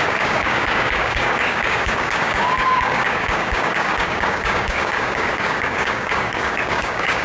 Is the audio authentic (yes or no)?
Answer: no